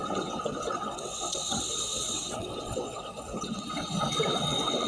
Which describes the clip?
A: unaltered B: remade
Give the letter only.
B